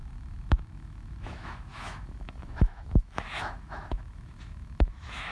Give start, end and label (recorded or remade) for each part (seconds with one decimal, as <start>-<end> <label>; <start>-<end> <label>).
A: 0.0-5.3 remade